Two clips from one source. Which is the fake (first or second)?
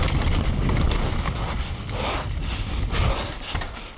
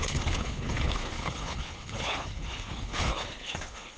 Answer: second